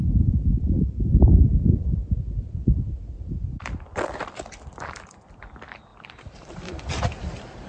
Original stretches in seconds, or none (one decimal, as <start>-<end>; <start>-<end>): none